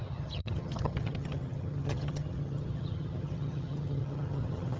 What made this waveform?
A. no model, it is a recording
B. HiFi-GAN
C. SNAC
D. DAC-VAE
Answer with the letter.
B